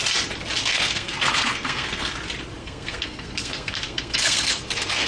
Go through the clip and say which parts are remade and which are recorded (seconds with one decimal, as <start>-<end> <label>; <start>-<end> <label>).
0.0-0.6 recorded; 0.6-2.1 remade; 2.1-2.6 recorded; 2.6-5.1 remade